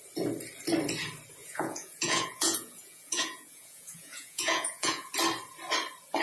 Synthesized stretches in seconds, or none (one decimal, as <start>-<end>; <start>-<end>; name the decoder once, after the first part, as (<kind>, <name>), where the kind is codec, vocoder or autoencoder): 1.4-5.1 (vocoder, Vocos)